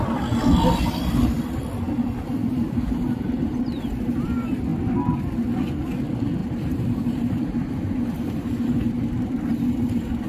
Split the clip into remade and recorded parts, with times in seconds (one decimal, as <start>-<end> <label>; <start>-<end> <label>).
0.0-2.4 recorded; 2.4-3.6 remade; 3.6-6.4 recorded; 6.4-9.3 remade; 9.3-10.3 recorded